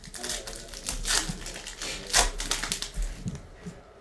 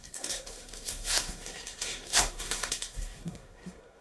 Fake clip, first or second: second